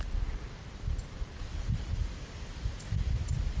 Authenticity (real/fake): real